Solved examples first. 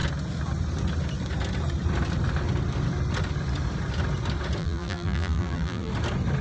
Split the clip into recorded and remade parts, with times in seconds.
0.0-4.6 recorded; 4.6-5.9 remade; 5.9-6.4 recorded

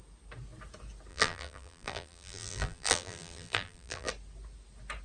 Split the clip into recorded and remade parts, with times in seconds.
0.0-1.1 recorded; 1.1-4.1 remade; 4.1-5.0 recorded

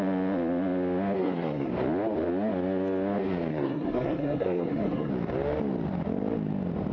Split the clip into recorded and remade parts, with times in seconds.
0.0-1.2 recorded; 1.2-1.7 remade; 1.7-3.5 recorded; 3.5-5.1 remade; 5.1-6.9 recorded

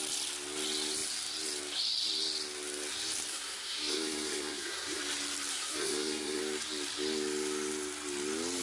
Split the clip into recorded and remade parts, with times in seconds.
0.0-3.3 recorded; 3.3-5.0 remade; 5.0-5.5 recorded; 5.5-6.4 remade; 6.4-8.6 recorded

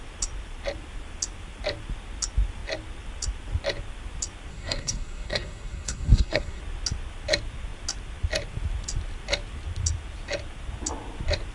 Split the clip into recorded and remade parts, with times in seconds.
0.0-4.5 recorded; 4.5-6.6 remade; 6.6-11.5 recorded

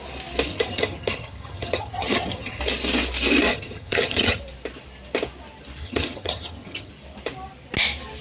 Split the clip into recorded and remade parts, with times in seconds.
0.0-0.5 recorded; 0.5-2.6 remade; 2.6-3.5 recorded; 3.5-4.4 remade; 4.4-5.8 recorded; 5.8-6.9 remade; 6.9-8.2 recorded